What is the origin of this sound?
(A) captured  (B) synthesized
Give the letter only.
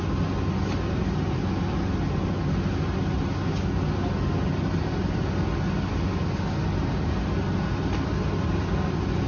A